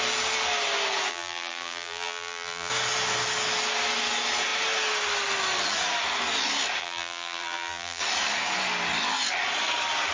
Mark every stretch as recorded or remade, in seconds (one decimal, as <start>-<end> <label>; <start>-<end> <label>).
0.0-1.1 recorded; 1.1-2.7 remade; 2.7-6.8 recorded; 6.8-8.0 remade; 8.0-10.1 recorded